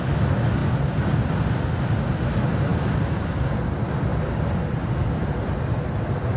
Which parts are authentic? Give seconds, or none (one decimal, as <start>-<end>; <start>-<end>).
0.0-6.4